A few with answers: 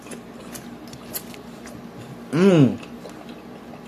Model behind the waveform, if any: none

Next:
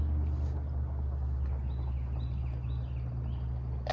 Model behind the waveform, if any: none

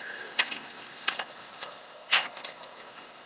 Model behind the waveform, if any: codec, ZipCodec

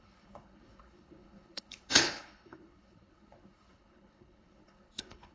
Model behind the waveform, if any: codec, HILCodec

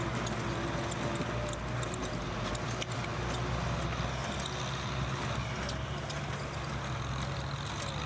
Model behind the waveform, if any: none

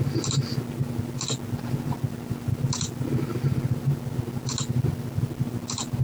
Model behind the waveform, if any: none